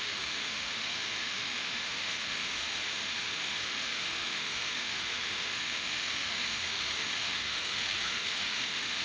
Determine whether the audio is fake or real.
fake